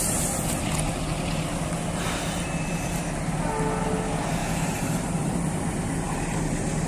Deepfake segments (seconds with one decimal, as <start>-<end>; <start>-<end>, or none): 4.4-5.3